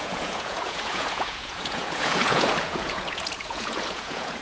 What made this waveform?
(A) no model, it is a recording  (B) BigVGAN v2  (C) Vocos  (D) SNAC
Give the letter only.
C